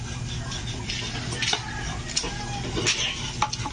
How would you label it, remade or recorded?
recorded